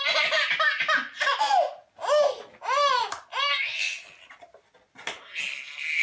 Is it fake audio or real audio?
real